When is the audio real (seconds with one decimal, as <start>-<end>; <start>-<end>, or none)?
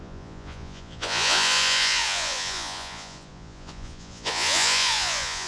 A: none